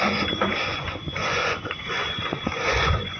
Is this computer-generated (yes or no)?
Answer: yes